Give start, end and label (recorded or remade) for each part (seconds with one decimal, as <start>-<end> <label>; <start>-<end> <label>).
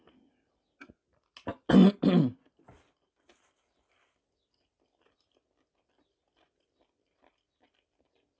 0.0-8.4 recorded